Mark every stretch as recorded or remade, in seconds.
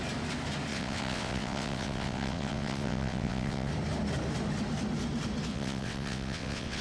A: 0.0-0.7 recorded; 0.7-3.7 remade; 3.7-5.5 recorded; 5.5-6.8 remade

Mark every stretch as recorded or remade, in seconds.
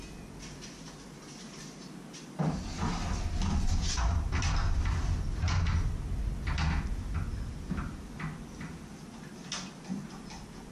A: 0.0-10.7 recorded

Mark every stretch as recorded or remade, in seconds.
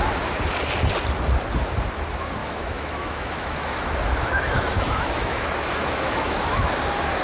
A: 0.0-2.4 recorded; 2.4-6.7 remade; 6.7-7.2 recorded